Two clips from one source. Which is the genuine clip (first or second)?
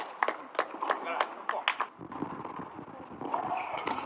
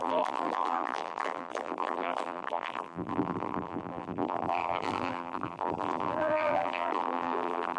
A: first